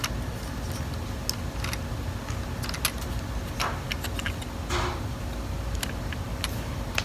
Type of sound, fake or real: real